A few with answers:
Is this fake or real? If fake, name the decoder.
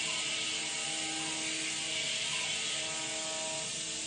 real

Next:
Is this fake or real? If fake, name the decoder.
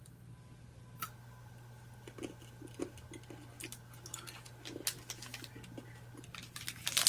real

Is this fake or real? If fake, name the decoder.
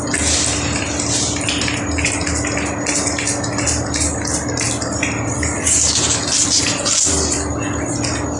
real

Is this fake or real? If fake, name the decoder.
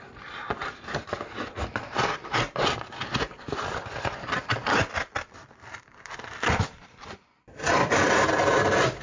fake, vocoder, BigVGAN v2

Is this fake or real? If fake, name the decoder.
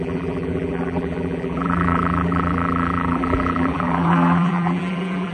fake, vocoder, BigVGAN v2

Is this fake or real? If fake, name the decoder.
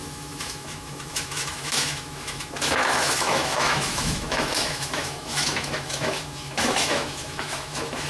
fake, autoencoder, DAC-VAE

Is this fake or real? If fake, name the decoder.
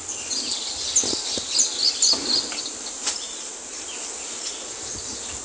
real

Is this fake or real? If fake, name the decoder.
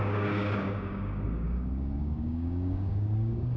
fake, codec, DAC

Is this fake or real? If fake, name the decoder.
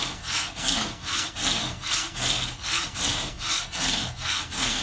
fake, codec, SNAC